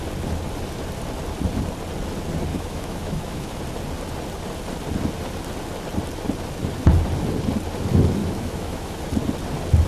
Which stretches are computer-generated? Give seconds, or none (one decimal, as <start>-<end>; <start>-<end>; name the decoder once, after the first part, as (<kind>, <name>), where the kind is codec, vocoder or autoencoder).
2.5-3.6 (autoencoder, DAC-VAE); 8.2-9.0